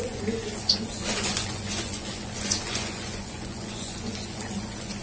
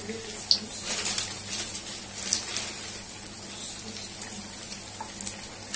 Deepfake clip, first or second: first